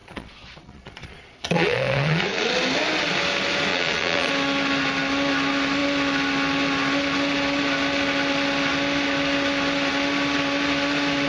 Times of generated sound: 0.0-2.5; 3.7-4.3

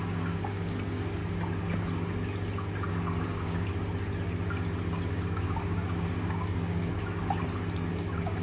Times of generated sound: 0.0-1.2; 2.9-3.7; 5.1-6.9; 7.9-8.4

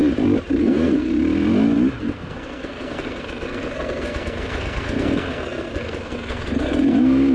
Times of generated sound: 0.6-1.1; 2.0-7.3

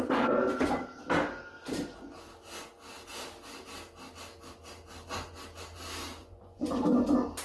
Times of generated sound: 6.2-6.8